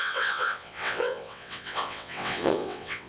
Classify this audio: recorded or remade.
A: remade